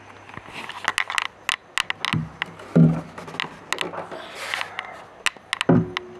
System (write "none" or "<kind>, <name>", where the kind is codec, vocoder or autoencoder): none